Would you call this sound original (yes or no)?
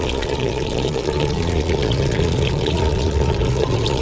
no